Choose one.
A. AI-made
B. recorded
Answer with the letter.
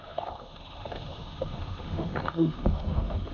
A